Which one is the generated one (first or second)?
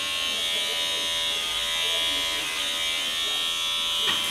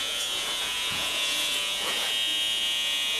second